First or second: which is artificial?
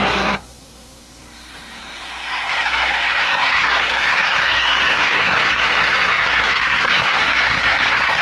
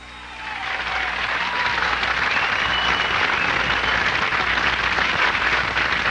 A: first